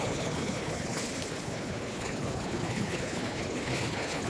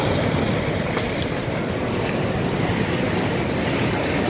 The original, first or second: second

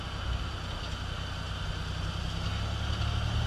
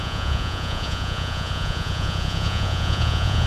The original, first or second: first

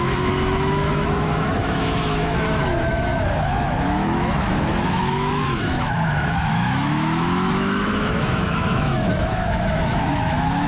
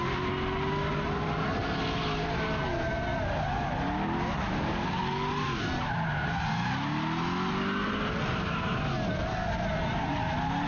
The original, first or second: second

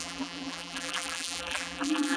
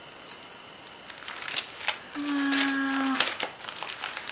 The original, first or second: second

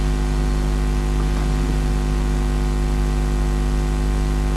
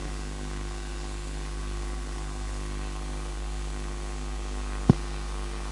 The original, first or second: first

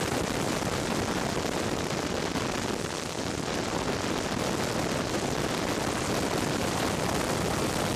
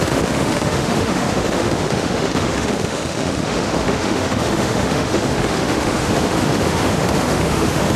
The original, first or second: first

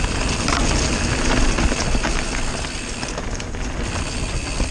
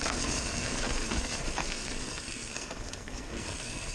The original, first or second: first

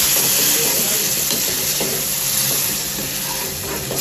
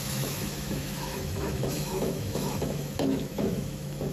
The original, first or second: first